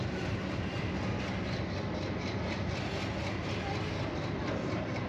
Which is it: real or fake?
real